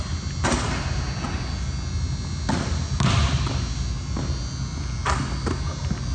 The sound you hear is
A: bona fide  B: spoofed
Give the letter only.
A